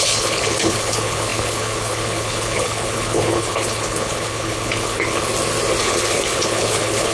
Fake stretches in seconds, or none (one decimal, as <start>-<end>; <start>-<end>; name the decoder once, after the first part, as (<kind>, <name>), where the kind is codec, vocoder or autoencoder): 0.0-5.3 (codec, HILCodec); 5.8-7.1